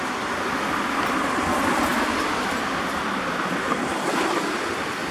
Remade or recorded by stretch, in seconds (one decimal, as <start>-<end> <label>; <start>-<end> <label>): 0.0-5.1 recorded